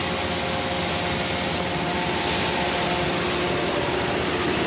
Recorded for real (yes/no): yes